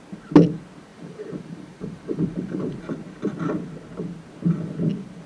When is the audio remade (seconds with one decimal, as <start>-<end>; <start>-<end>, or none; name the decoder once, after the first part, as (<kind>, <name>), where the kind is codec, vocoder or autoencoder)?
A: 0.9-2.8 (vocoder, BigVGAN v2)